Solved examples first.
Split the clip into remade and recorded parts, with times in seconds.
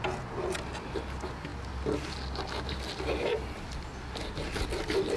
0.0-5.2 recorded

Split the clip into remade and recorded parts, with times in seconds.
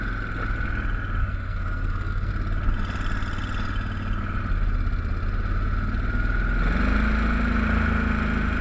0.0-1.2 recorded; 1.2-2.3 remade; 2.3-8.6 recorded